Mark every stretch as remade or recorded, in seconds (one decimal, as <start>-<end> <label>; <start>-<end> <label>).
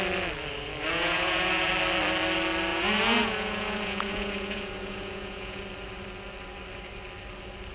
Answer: 0.0-0.9 recorded; 0.9-1.7 remade; 1.7-2.7 recorded; 2.7-5.6 remade; 5.6-7.7 recorded